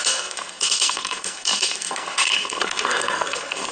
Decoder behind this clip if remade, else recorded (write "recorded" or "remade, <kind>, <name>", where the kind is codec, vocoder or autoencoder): remade, codec, SNAC